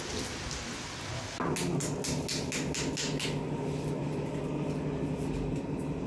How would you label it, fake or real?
real